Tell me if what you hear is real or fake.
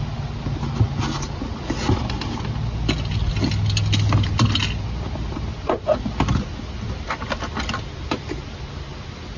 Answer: real